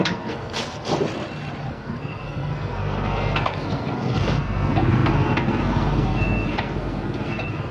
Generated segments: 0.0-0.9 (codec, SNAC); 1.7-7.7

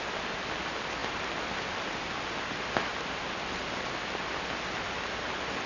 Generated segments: none

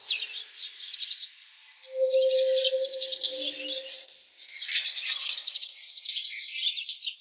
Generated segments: 5.2-5.8 (codec, DAC)

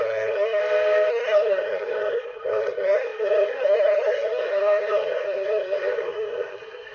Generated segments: 0.0-0.6 (codec, SNAC); 1.1-6.9

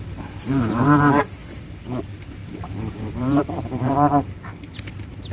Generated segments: 0.0-1.4 (vocoder, BigVGAN v2); 2.0-5.3